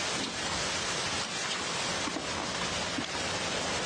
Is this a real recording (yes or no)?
yes